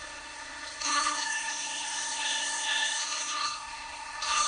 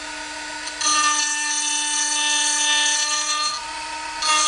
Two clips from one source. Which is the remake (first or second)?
first